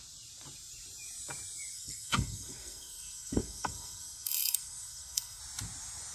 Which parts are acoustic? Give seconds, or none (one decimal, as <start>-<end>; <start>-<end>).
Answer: 0.0-1.7; 5.4-6.1